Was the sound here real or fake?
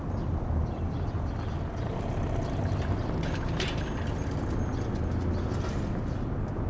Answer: real